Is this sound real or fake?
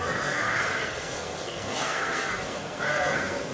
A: fake